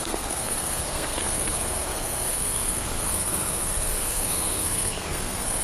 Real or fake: fake